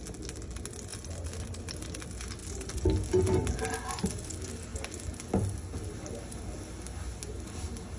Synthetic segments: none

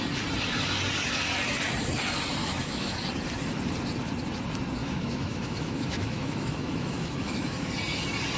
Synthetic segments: 2.4-3.0 (autoencoder, DAC-VAE); 4.8-7.7

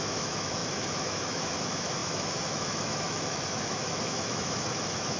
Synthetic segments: 0.0-5.2 (autoencoder, DAC-VAE)

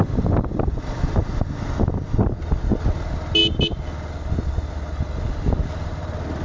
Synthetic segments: none

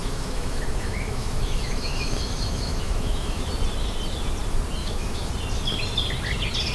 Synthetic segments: 0.0-3.5 (autoencoder, DAC-VAE); 4.8-5.3

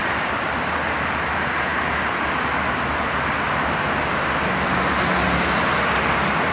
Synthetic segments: none

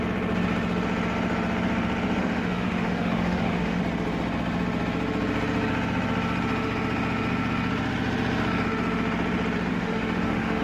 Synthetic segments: 2.2-3.8 (autoencoder, DAC-VAE); 9.7-10.6

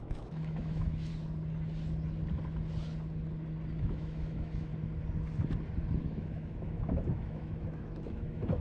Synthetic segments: 0.0-1.1 (autoencoder, DAC-VAE); 3.8-4.7; 6.0-8.6